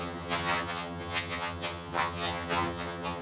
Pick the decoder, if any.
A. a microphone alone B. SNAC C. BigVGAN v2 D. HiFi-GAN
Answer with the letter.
D